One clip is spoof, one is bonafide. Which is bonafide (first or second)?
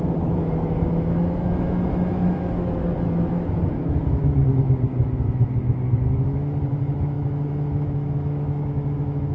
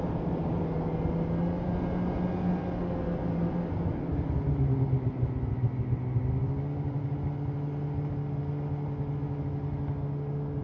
second